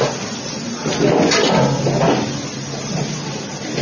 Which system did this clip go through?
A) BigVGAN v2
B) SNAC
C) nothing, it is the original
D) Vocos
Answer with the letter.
C